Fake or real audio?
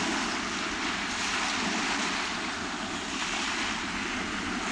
real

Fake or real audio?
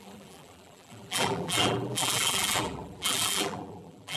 fake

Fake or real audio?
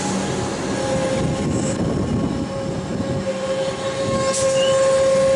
real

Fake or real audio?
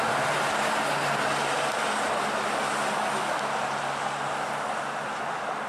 real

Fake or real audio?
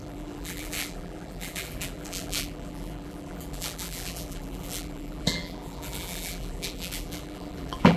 fake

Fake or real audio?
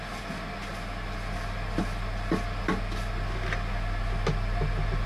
real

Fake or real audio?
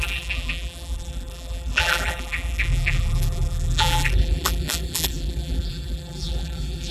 fake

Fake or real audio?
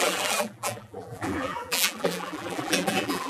fake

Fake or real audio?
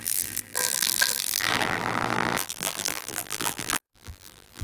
fake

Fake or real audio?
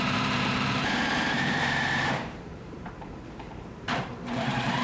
fake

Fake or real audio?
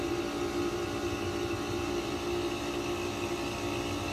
real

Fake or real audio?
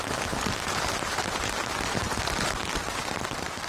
fake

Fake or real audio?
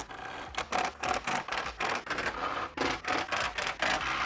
real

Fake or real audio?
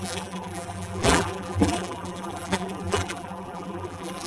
fake